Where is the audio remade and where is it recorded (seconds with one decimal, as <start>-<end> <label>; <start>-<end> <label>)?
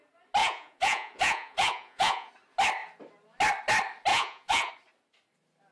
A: 0.0-0.4 recorded; 0.4-2.3 remade; 2.3-4.1 recorded; 4.1-4.7 remade; 4.7-5.7 recorded